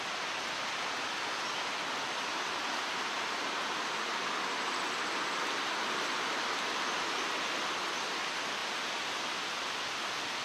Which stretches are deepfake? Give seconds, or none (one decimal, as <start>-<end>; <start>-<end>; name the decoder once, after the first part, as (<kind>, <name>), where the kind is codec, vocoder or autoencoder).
none